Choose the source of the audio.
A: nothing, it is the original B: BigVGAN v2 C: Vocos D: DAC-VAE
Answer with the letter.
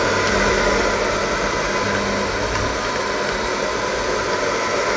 A